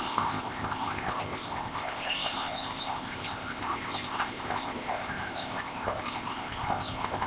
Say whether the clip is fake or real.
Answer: fake